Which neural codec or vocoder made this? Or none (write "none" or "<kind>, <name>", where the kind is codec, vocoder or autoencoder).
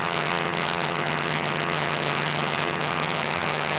vocoder, HiFi-GAN